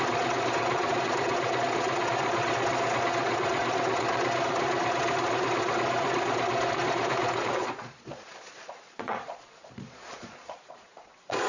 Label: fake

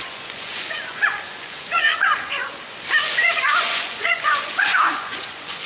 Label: fake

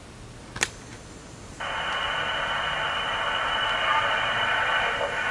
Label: real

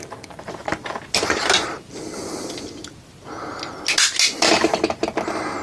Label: real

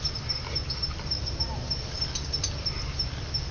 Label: real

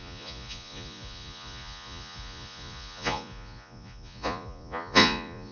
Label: fake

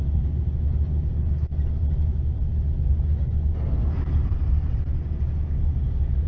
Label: real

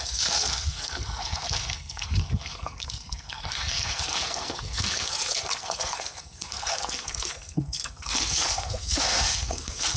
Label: fake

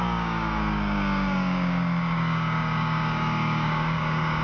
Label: fake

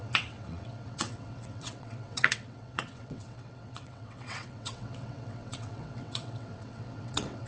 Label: fake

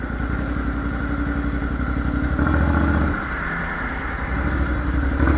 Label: real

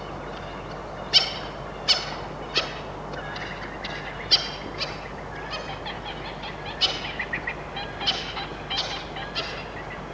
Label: real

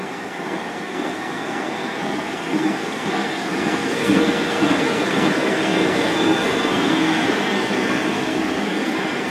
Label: fake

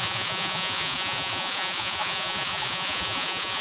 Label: fake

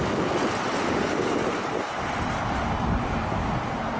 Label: real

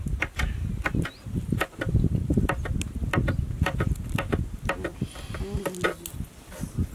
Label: real